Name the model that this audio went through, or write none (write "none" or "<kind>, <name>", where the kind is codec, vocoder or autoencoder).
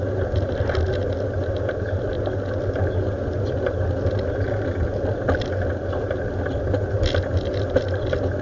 none